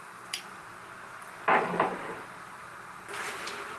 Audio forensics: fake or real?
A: fake